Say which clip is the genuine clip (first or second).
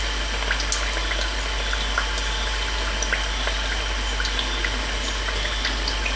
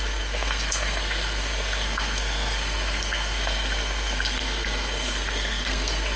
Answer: first